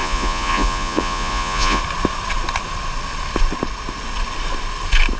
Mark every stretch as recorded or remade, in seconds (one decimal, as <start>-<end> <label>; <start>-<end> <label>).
0.0-1.8 remade; 1.8-5.2 recorded